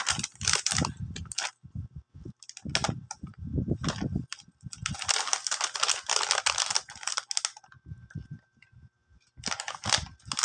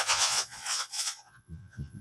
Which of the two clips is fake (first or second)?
second